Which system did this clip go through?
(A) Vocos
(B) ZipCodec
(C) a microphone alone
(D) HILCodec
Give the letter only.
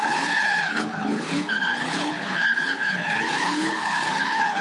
D